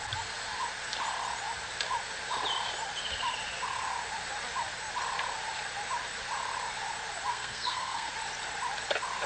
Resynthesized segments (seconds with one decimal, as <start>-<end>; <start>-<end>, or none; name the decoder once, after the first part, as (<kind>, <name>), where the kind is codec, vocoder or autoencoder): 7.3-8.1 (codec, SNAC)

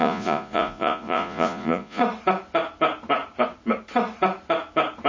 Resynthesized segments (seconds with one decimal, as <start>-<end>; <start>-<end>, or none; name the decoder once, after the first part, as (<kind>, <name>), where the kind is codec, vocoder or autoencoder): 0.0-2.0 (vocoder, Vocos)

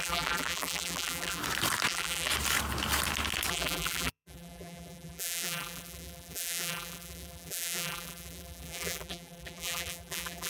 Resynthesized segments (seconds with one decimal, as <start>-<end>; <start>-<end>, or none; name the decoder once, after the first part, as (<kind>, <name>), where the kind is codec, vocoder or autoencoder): 0.0-1.4 (vocoder, BigVGAN v2); 1.9-2.3; 3.5-10.5

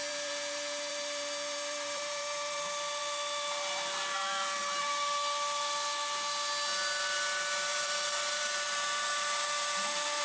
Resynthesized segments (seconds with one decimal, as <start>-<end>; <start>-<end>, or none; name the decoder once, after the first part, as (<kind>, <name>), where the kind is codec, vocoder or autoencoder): 0.0-2.6 (vocoder, BigVGAN v2); 7.7-10.2

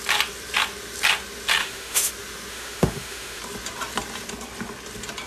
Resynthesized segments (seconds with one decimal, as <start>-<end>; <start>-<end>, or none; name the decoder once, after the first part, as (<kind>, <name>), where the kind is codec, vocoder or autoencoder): 1.6-2.1 (autoencoder, DAC-VAE); 2.5-3.4

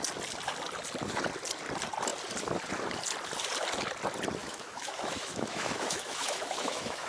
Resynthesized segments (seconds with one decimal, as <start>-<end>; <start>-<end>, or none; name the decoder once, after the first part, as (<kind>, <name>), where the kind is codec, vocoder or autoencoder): 4.4-7.1 (autoencoder, DAC-VAE)